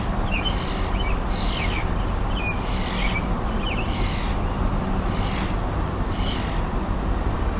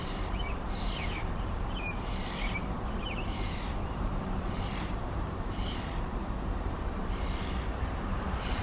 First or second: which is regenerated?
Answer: second